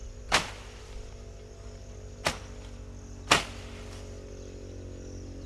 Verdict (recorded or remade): recorded